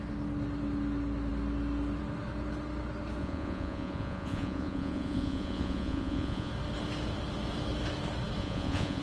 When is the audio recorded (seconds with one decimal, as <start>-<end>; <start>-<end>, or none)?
0.0-3.2; 6.5-8.4